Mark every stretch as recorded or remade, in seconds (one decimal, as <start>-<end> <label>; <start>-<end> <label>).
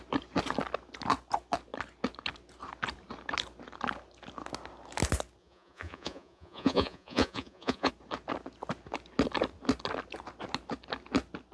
0.0-5.4 recorded; 5.4-7.9 remade; 7.9-11.5 recorded